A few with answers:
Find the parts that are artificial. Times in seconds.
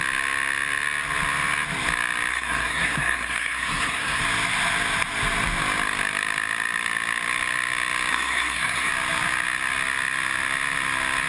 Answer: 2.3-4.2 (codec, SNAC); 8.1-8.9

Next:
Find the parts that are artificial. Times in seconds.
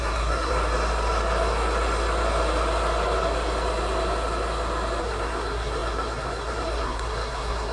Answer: 0.0-0.5 (codec, SNAC); 5.0-7.7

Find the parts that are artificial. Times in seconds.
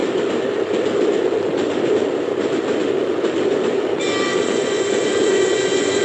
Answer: 4.3-6.0 (vocoder, Vocos)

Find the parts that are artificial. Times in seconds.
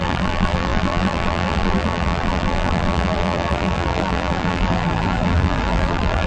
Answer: 0.0-6.3 (vocoder, BigVGAN v2)